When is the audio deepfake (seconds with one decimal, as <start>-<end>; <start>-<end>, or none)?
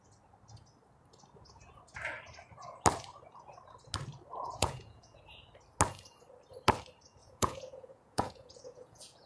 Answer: 4.6-5.2; 7.2-9.3